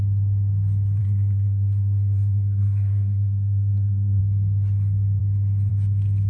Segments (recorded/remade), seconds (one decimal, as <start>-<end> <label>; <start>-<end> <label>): 0.0-1.0 recorded; 1.0-4.2 remade; 4.2-6.3 recorded